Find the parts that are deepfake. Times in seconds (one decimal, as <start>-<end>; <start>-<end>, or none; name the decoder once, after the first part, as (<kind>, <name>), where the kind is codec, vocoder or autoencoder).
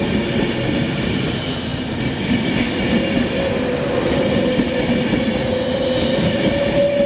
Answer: none